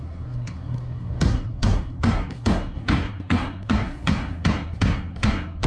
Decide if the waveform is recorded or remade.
remade